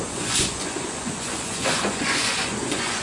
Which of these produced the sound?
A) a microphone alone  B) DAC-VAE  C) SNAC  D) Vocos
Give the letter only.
D